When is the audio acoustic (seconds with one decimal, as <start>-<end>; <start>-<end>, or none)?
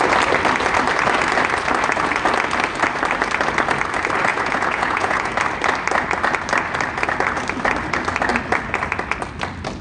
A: 0.0-4.3; 5.3-9.8